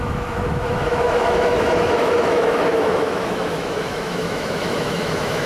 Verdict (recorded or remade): remade